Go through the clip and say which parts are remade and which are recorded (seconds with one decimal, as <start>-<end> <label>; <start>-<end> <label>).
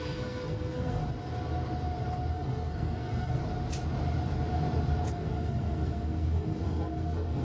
0.0-1.0 remade; 1.0-2.3 recorded; 2.3-3.4 remade; 3.4-5.1 recorded; 5.1-7.4 remade